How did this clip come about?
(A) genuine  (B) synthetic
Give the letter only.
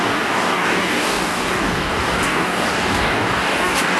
B